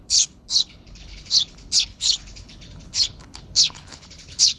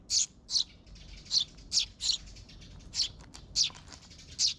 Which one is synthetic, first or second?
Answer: first